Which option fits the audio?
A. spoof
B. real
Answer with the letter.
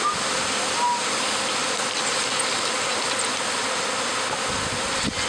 B